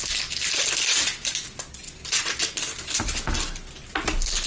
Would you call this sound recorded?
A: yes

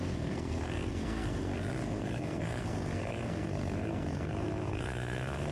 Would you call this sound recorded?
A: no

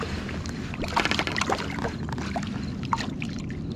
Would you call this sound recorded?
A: yes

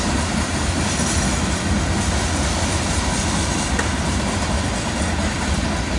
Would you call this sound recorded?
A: yes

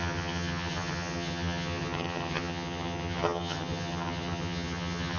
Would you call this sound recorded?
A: no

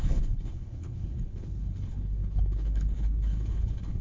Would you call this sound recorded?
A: no